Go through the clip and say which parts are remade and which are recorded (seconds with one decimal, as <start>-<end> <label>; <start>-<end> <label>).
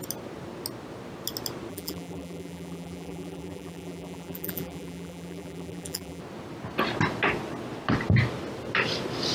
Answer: 0.0-1.7 recorded; 1.7-6.2 remade; 6.2-9.3 recorded